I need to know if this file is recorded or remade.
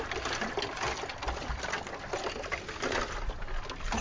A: recorded